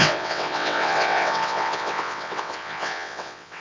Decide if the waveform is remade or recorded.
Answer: remade